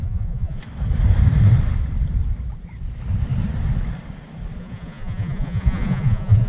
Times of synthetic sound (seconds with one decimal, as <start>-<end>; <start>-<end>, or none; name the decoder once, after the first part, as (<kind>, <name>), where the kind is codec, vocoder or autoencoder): 0.0-0.6 (vocoder, Vocos); 4.6-6.5